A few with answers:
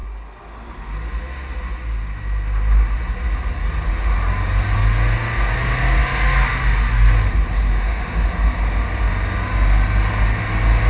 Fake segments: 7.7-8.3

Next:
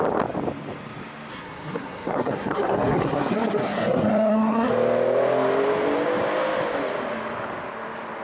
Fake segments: 1.3-4.7

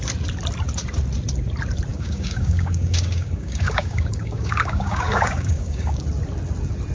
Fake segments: 1.9-6.0

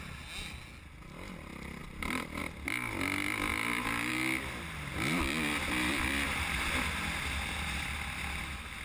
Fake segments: 1.8-2.4

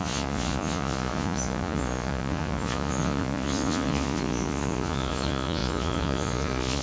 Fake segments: 0.0-6.8